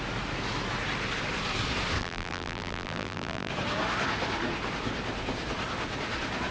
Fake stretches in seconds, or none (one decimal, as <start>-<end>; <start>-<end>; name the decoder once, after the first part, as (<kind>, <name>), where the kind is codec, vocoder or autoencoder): 2.0-3.5 (vocoder, BigVGAN v2)